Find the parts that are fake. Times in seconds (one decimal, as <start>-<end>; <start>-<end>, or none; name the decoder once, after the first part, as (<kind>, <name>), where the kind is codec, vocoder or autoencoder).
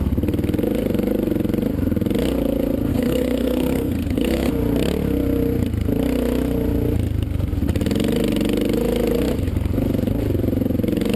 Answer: 2.9-4.5 (codec, SNAC)